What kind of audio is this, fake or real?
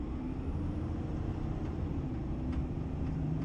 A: fake